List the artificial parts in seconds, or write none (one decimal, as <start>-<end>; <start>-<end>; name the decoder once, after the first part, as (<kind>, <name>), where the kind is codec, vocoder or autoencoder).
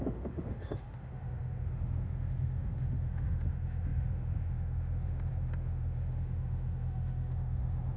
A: 0.0-8.0 (autoencoder, DAC-VAE)